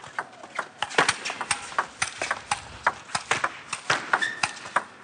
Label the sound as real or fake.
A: real